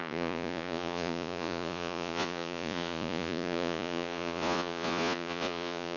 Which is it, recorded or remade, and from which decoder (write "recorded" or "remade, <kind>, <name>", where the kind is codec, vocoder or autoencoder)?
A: remade, vocoder, Vocos